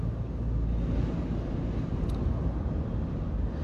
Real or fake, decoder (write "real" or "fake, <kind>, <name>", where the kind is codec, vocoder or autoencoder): real